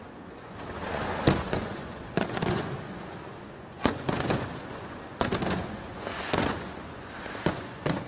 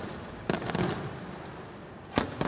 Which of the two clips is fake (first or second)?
first